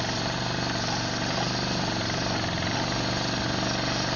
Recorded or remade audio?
recorded